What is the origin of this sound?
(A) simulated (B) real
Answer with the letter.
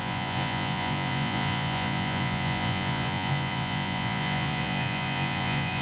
A